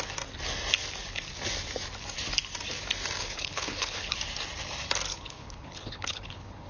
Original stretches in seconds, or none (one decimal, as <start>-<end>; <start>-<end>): 0.0-3.2; 4.1-5.1